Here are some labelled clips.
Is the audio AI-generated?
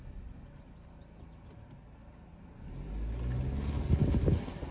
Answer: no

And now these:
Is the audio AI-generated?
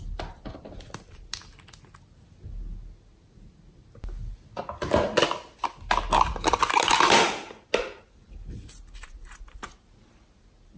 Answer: no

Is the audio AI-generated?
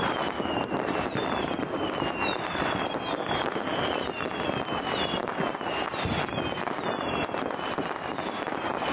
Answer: no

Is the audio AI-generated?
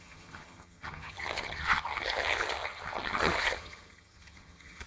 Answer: yes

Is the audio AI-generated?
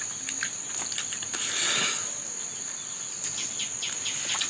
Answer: no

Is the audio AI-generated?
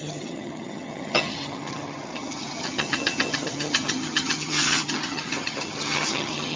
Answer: yes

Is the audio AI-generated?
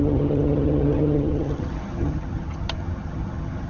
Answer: yes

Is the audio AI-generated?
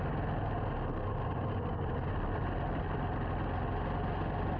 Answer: no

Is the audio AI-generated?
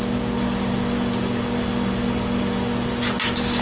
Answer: no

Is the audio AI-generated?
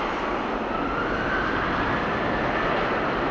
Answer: no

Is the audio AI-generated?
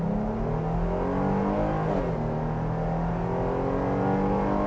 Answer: no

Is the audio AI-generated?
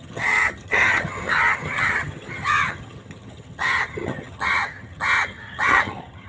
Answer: yes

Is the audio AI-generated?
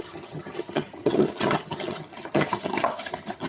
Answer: yes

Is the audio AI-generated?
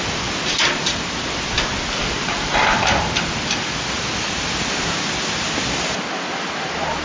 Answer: no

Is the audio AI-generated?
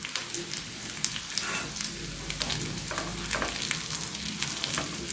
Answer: no